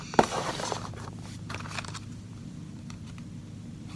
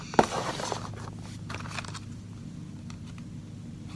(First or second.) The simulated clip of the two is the first